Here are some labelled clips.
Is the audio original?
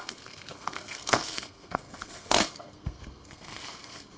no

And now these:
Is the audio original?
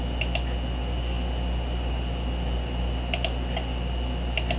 yes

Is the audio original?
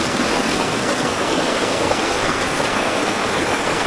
no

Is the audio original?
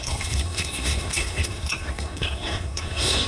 no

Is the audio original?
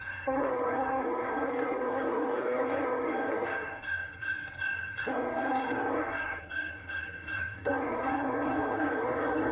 no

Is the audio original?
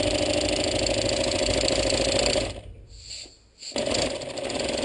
yes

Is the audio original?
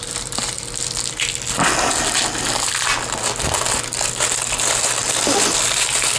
yes